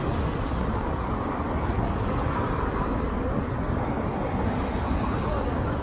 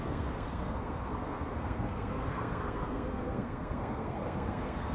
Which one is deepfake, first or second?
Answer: second